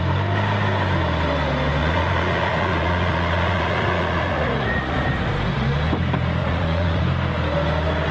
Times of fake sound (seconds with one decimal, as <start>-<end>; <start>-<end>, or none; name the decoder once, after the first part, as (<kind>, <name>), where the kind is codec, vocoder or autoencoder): 1.8-5.3 (vocoder, Vocos); 6.4-7.0